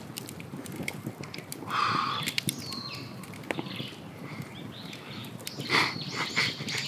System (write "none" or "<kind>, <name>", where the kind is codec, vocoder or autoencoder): none